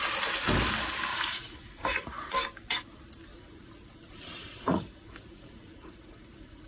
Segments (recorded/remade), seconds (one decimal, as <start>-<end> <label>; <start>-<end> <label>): 0.0-1.1 recorded; 1.1-2.3 remade; 2.3-3.3 recorded; 3.3-6.7 remade